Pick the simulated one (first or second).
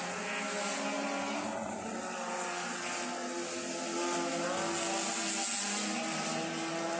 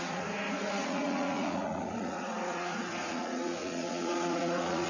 second